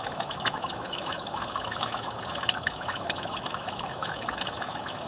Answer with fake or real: fake